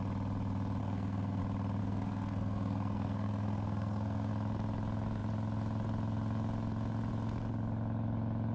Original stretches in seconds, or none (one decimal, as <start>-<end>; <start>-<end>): 0.0-0.8; 1.4-1.8; 4.3-8.5